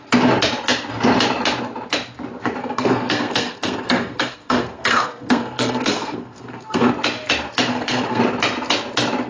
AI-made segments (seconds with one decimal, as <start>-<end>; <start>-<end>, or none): 2.6-6.9; 7.7-8.2